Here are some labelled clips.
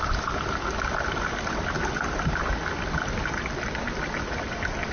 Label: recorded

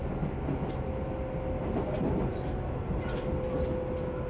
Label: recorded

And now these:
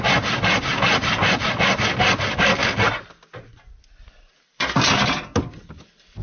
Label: recorded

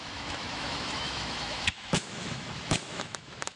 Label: remade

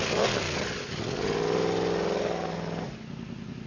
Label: recorded